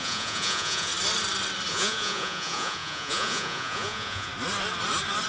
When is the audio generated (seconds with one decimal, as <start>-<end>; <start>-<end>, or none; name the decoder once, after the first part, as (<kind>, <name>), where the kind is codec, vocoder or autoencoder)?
0.0-0.9 (vocoder, Vocos); 1.7-4.3